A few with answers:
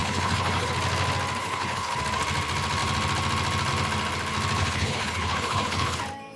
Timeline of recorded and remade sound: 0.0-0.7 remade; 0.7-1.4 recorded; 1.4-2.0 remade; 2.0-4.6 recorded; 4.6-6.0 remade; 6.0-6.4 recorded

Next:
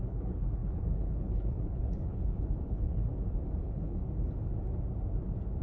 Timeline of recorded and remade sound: 0.0-3.1 remade; 3.1-3.6 recorded; 3.6-4.0 remade; 4.0-5.6 recorded

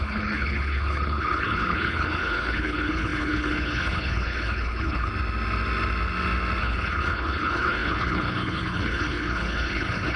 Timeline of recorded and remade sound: 0.0-5.1 remade; 5.1-6.6 recorded; 6.6-10.2 remade

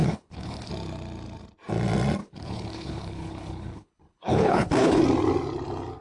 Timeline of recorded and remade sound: 0.0-0.7 remade; 0.7-2.2 recorded; 2.2-5.0 remade; 5.0-6.0 recorded

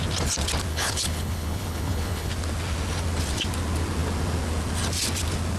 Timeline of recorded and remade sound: 0.0-0.7 recorded; 0.7-2.3 remade; 2.3-5.6 recorded

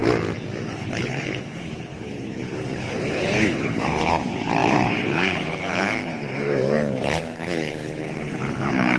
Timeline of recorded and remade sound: 0.0-0.6 recorded; 0.6-9.0 remade

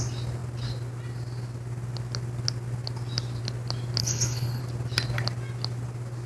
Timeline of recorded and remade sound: 0.0-4.0 recorded; 4.0-4.6 remade; 4.6-6.3 recorded

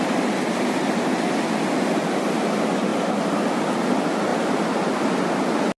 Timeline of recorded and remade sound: 0.0-5.8 recorded